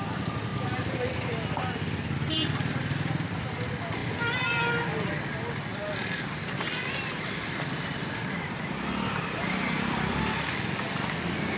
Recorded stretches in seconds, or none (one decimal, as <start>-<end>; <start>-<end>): 0.0-4.0; 5.2-5.7; 10.2-11.6